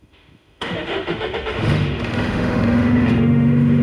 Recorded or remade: remade